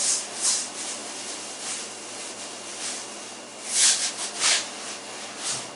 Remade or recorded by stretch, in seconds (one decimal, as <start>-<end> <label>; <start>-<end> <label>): 0.0-5.8 recorded